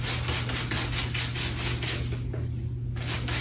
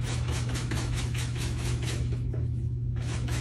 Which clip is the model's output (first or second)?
second